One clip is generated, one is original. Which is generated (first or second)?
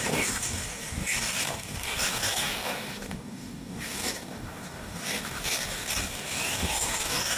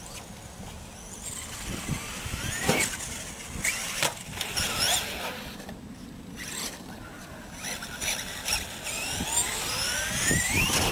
first